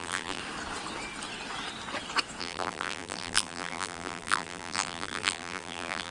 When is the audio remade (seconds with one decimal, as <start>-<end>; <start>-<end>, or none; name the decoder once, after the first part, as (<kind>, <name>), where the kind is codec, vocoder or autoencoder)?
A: 0.0-0.4 (vocoder, BigVGAN v2); 2.4-6.1